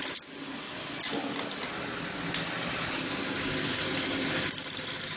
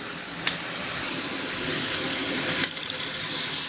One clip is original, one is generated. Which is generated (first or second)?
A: second